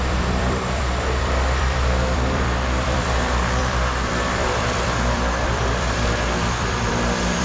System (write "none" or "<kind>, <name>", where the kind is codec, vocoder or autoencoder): vocoder, BigVGAN v2